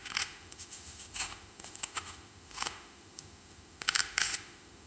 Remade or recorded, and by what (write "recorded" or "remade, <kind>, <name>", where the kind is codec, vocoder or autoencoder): remade, autoencoder, DAC-VAE